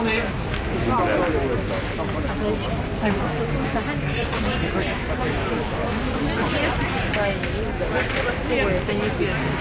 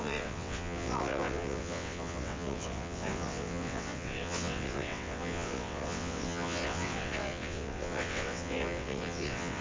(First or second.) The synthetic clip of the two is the second